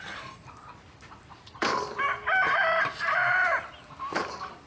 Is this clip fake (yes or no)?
yes